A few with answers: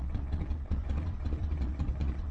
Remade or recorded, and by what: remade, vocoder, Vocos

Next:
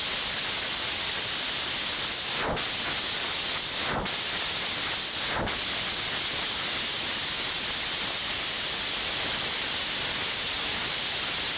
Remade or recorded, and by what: recorded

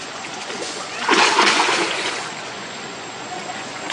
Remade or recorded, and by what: remade, vocoder, Vocos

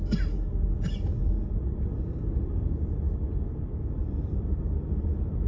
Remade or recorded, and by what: recorded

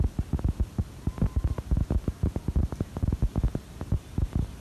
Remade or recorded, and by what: remade, vocoder, BigVGAN v2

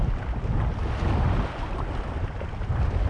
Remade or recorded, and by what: recorded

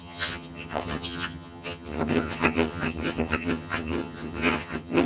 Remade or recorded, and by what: remade, vocoder, HiFi-GAN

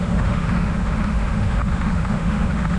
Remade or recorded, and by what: remade, autoencoder, DAC-VAE